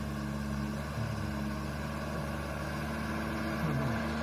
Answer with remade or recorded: recorded